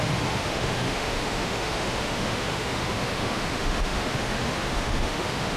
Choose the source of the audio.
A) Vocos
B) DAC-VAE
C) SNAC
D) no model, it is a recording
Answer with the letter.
B